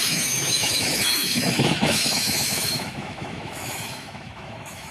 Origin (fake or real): fake